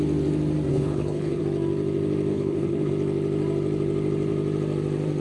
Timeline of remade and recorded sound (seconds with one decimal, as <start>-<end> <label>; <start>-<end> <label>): 0.0-0.7 recorded; 0.7-1.4 remade; 1.4-2.3 recorded; 2.3-2.9 remade; 2.9-5.2 recorded